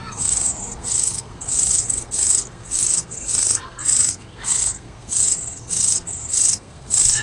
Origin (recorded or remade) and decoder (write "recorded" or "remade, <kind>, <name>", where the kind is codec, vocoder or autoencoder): remade, codec, SNAC